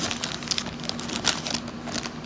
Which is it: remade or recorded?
recorded